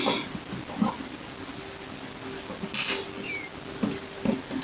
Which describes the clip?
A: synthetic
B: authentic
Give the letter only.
B